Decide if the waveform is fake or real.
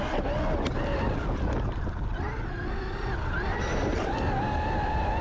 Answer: real